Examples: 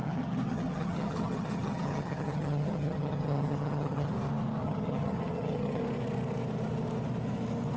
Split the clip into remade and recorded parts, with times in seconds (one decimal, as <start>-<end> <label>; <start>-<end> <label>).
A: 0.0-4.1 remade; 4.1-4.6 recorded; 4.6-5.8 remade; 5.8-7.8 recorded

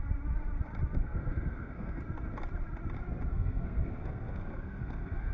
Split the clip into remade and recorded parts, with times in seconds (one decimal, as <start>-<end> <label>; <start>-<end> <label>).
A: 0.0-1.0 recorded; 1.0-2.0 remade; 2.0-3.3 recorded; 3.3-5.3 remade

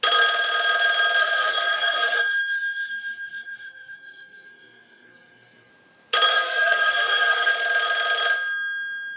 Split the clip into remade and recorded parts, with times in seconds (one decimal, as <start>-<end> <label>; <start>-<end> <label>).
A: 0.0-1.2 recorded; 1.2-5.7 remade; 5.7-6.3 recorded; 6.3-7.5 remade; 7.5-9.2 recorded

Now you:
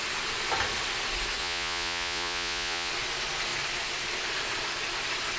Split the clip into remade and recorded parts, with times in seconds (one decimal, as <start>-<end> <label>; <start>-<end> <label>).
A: 0.0-1.4 recorded; 1.4-2.9 remade; 2.9-5.4 recorded

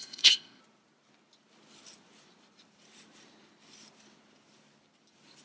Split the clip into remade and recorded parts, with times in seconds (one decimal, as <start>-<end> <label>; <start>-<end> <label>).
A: 0.0-0.6 remade; 0.6-5.4 recorded

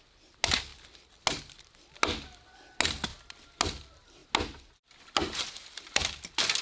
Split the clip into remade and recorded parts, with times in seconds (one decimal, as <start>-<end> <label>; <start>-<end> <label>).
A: 0.0-6.6 recorded